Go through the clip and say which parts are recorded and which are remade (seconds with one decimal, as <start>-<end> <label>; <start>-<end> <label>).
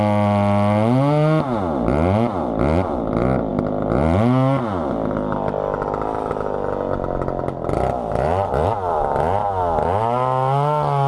0.0-11.1 recorded